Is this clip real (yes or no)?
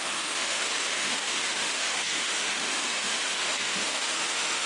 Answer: no